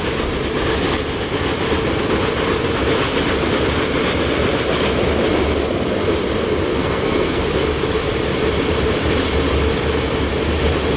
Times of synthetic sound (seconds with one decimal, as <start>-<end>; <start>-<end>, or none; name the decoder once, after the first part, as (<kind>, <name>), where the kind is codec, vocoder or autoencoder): 6.8-7.4 (codec, SNAC)